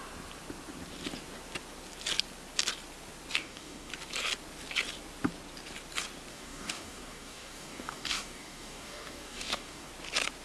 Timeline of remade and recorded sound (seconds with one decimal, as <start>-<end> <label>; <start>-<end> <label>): 0.0-3.4 recorded; 3.4-3.9 remade; 3.9-6.3 recorded; 6.3-9.9 remade; 9.9-10.4 recorded